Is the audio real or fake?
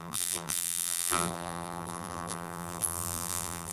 fake